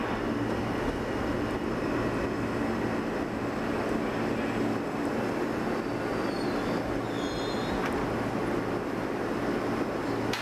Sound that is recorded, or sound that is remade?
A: recorded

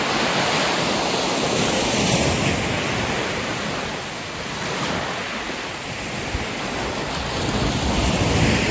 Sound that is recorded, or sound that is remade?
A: recorded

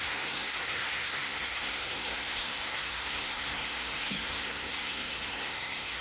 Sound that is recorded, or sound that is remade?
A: remade